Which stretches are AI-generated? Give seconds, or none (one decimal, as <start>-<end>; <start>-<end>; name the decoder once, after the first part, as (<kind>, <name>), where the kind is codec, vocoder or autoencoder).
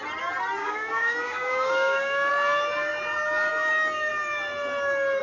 0.6-2.3 (codec, DAC)